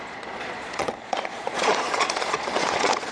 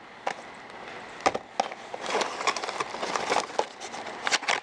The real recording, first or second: second